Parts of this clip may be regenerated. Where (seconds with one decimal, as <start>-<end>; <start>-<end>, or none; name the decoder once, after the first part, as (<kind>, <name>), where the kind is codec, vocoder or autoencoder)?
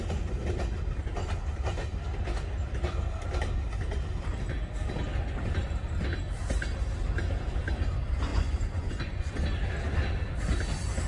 8.3-9.3 (vocoder, Vocos)